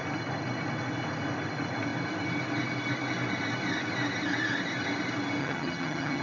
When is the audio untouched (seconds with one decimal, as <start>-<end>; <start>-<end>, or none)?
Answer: 0.0-5.4